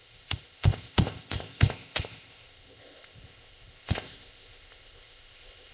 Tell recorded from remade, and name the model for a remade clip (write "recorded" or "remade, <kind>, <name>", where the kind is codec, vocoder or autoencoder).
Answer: remade, codec, ZipCodec